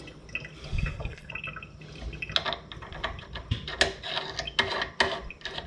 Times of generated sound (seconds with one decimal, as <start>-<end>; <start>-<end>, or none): 0.7-1.3